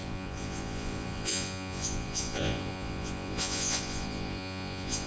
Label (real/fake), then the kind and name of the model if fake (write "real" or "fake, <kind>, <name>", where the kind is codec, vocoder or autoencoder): fake, vocoder, Vocos